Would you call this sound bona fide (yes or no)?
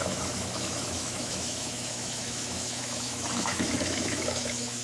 no